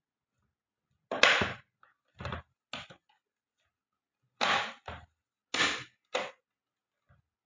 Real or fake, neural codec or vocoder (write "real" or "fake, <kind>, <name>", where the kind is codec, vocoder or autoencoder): real